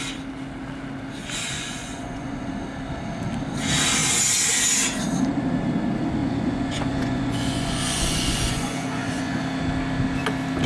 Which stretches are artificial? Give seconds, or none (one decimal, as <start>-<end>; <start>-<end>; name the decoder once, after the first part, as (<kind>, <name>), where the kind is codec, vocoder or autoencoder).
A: 1.2-2.5 (vocoder, Vocos); 6.2-9.4

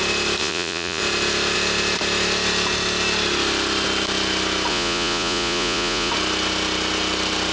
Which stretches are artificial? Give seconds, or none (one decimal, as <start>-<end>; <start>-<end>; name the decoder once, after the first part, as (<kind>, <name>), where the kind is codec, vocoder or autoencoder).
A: 0.4-1.0 (vocoder, Vocos); 4.7-6.1

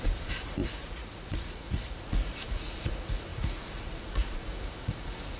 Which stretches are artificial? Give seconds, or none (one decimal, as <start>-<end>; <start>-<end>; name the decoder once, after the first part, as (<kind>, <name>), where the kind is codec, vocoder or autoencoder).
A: 0.0-5.4 (vocoder, Vocos)

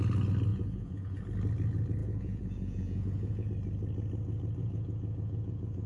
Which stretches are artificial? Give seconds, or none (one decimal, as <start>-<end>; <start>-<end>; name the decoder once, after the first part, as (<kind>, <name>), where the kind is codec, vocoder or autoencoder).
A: 0.5-1.2 (vocoder, Vocos); 2.0-3.5; 4.6-5.9

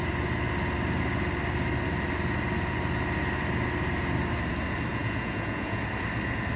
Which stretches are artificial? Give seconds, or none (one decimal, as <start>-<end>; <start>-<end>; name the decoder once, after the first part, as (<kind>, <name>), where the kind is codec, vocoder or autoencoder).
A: 4.9-5.8 (vocoder, Vocos)